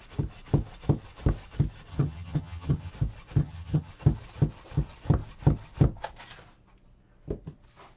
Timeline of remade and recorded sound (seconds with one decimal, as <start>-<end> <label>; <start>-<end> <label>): 0.0-1.9 recorded; 1.9-2.9 remade; 2.9-3.4 recorded; 3.4-3.9 remade; 3.9-8.0 recorded